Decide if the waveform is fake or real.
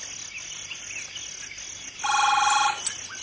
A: real